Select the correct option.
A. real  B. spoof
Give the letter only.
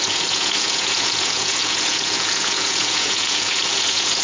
B